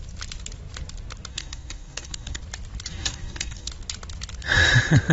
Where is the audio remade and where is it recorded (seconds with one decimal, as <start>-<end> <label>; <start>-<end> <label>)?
0.0-1.3 recorded; 1.3-2.4 remade; 2.4-2.9 recorded; 2.9-3.7 remade; 3.7-5.1 recorded